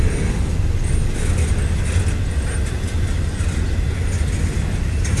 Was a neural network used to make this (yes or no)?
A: no